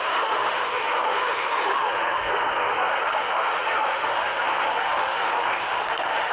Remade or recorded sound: remade